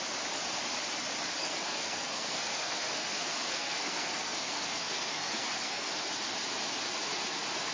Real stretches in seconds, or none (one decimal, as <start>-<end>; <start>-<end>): 0.0-1.4; 5.9-7.7